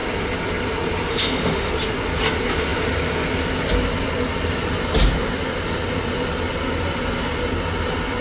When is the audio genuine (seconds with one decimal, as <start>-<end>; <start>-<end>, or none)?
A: 0.0-1.1; 1.7-8.2